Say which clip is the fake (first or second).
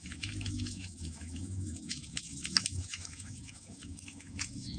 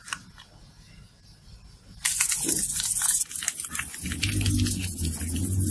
first